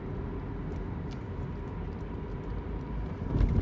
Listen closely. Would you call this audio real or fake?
real